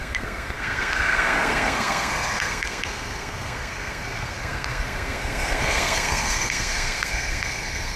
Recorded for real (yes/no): no